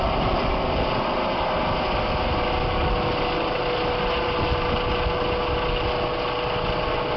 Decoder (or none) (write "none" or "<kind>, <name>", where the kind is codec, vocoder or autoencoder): none